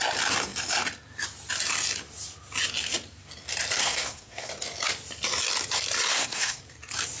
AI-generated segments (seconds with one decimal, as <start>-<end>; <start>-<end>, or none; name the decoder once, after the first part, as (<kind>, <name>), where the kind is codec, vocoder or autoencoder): 3.8-4.5 (codec, SNAC); 6.1-6.6